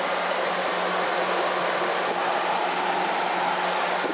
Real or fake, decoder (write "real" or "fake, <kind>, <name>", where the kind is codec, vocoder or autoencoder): real